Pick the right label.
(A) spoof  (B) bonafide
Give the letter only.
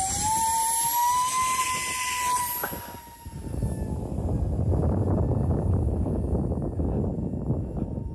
B